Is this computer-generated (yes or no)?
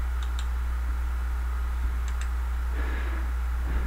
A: no